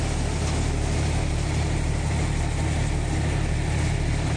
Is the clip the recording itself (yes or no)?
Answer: yes